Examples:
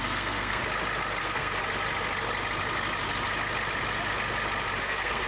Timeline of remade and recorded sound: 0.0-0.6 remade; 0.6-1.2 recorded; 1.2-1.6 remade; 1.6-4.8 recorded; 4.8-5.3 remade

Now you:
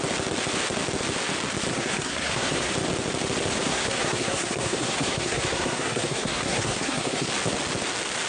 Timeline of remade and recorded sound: 0.0-1.7 recorded; 1.7-2.7 remade; 2.7-3.7 recorded; 3.7-7.3 remade; 7.3-8.3 recorded

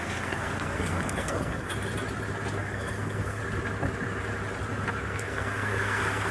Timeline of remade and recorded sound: 0.0-1.7 remade; 1.7-2.6 recorded; 2.6-3.4 remade; 3.4-5.0 recorded; 5.0-6.3 remade

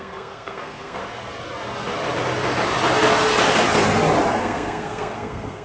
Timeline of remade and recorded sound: 0.0-1.0 remade; 1.0-4.4 recorded; 4.4-5.6 remade

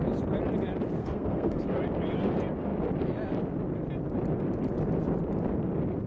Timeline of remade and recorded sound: 0.0-1.0 recorded; 1.0-1.6 remade; 1.6-6.1 recorded

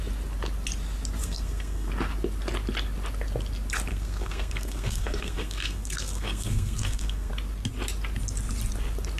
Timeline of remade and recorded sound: 0.0-1.2 recorded; 1.2-1.9 remade; 1.9-3.9 recorded; 3.9-7.3 remade; 7.3-9.2 recorded

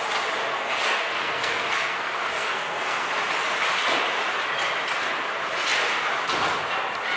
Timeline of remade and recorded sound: 0.0-0.5 recorded; 0.5-3.1 remade; 3.1-7.2 recorded